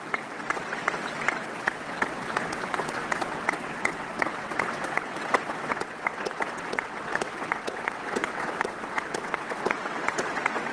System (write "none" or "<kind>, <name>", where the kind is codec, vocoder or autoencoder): vocoder, WaveNeXt